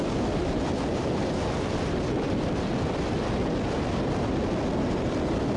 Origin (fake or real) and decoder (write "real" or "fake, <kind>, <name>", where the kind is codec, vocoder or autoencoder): real